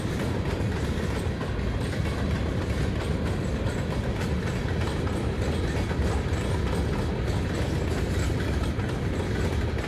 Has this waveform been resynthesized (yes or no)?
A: no